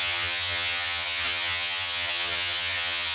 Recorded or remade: remade